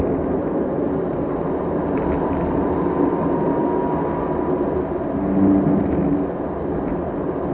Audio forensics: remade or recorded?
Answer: recorded